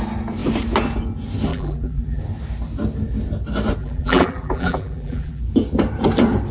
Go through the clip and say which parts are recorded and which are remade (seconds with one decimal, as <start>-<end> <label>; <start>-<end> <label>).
0.0-1.5 recorded; 1.5-2.2 remade; 2.2-3.8 recorded; 3.8-5.4 remade; 5.4-6.5 recorded